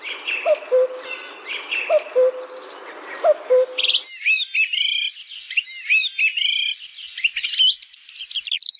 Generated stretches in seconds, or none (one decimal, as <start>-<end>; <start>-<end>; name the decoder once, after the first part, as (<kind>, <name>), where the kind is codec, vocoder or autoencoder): none